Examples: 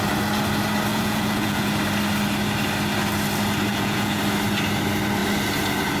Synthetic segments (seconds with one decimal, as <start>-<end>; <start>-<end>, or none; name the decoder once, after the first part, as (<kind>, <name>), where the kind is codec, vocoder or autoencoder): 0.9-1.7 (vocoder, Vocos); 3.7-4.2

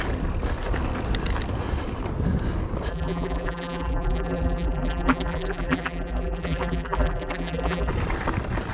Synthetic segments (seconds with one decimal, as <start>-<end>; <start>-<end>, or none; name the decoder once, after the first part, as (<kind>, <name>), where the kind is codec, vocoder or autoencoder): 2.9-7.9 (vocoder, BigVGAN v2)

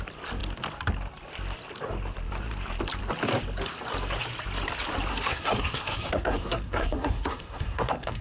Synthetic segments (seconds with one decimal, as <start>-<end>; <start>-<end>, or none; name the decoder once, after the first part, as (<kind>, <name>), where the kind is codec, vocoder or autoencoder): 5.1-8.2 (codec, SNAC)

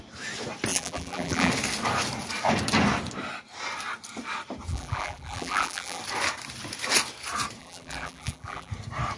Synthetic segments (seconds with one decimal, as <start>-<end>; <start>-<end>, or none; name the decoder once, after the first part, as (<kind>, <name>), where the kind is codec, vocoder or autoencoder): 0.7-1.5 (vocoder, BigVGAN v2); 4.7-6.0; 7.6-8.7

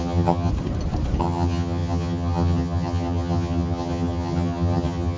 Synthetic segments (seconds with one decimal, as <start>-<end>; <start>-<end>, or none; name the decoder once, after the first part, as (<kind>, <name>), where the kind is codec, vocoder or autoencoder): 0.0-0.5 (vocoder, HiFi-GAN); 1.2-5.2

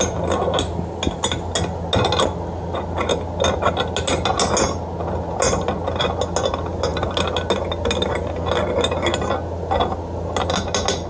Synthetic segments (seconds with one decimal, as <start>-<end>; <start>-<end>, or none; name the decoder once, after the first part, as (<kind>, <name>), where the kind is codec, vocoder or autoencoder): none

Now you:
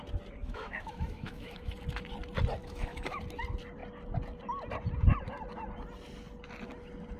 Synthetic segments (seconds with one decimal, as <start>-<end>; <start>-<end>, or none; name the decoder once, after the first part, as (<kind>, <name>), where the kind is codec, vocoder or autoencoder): 0.4-1.7 (autoencoder, DAC-VAE); 2.6-3.2

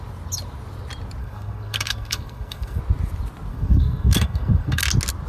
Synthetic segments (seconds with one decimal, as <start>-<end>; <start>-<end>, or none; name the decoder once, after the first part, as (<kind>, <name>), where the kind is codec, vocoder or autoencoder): 1.2-2.8 (codec, SNAC); 3.5-4.8